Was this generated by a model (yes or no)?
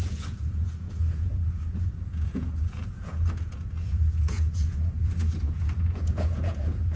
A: yes